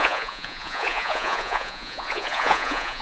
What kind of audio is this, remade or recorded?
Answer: remade